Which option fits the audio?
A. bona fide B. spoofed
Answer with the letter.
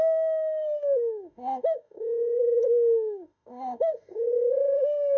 B